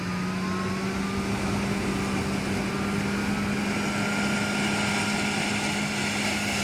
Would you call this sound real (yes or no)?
yes